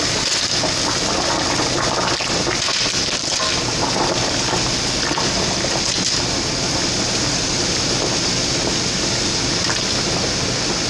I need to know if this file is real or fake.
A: real